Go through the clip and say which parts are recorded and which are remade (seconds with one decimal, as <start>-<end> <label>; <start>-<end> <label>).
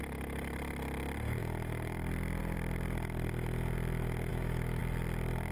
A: 0.0-4.3 recorded; 4.3-4.8 remade; 4.8-5.5 recorded